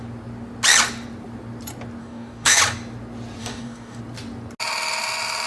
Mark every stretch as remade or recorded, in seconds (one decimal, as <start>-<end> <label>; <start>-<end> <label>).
0.0-2.0 recorded; 2.0-2.6 remade; 2.6-3.4 recorded; 3.4-4.0 remade; 4.0-5.5 recorded